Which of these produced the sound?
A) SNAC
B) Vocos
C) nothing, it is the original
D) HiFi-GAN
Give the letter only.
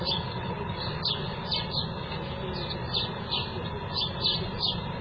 C